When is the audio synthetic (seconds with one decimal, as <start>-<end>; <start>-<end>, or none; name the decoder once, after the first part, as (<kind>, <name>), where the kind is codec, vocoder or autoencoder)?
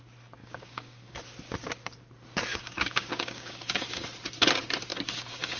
0.4-1.2 (codec, DAC); 2.5-4.0; 4.9-5.6